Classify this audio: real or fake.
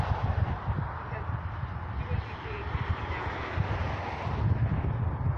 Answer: real